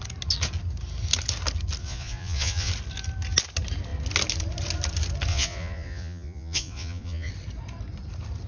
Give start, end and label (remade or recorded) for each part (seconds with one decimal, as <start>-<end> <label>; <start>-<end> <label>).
0.0-1.8 recorded; 1.8-2.7 remade; 2.7-5.3 recorded; 5.3-7.3 remade; 7.3-8.5 recorded